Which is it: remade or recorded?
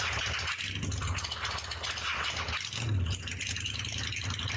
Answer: recorded